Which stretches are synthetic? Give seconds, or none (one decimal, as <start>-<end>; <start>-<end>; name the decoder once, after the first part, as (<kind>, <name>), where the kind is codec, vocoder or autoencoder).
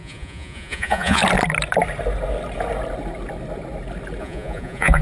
0.0-1.2 (vocoder, Vocos); 4.2-5.0